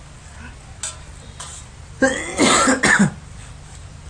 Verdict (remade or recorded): recorded